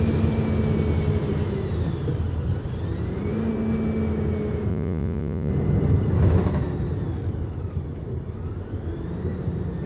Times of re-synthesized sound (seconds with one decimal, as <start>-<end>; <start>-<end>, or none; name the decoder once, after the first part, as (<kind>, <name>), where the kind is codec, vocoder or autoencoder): 4.7-5.5 (vocoder, Vocos)